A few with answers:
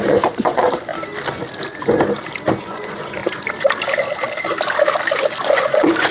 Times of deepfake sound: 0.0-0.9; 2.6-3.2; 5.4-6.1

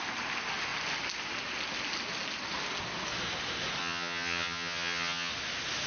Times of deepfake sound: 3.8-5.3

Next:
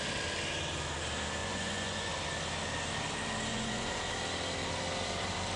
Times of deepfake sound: 1.4-2.1; 3.5-4.0

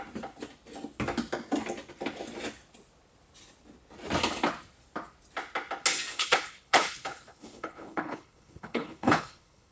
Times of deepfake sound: 6.1-9.7

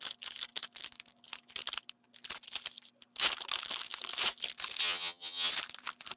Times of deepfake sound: 4.8-5.5

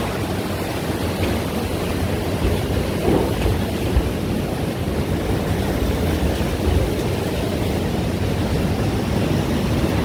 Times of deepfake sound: 1.7-4.5